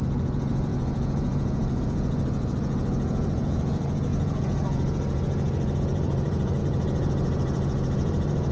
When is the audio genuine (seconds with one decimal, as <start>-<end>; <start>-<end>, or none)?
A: none